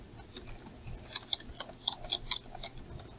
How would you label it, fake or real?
real